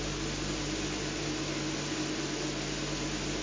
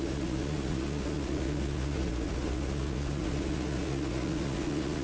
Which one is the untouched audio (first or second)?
first